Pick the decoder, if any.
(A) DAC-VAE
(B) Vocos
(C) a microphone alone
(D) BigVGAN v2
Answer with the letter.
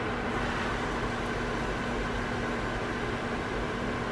C